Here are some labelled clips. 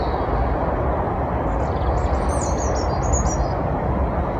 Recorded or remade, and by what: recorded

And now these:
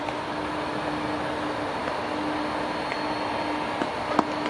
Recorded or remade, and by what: recorded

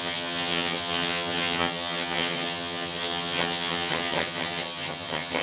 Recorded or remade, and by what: remade, vocoder, HiFi-GAN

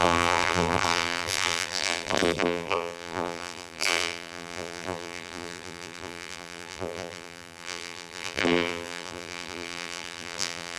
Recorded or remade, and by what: remade, vocoder, BigVGAN v2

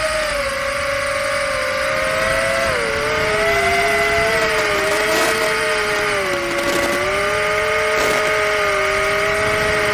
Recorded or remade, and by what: recorded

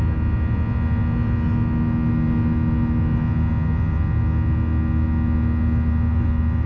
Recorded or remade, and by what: recorded